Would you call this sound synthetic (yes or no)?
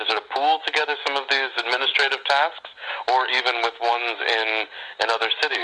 yes